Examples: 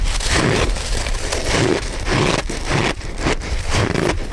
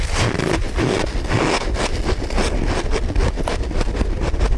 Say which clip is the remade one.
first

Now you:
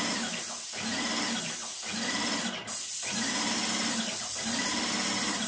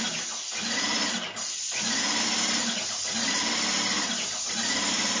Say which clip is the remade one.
first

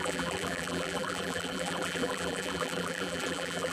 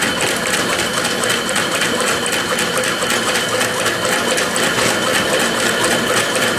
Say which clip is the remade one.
first